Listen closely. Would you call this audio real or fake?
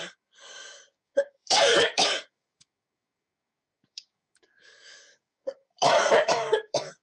fake